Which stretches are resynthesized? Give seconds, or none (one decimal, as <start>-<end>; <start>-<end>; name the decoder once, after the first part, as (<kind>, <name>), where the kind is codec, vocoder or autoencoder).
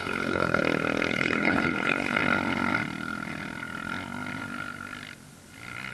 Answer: 0.0-0.6 (codec, HILCodec); 1.1-2.2